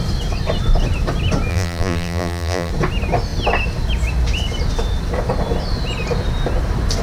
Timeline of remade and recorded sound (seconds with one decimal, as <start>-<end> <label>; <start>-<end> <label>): 0.0-1.5 recorded; 1.5-2.7 remade; 2.7-7.0 recorded